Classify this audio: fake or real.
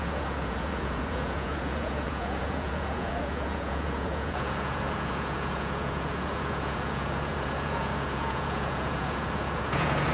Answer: fake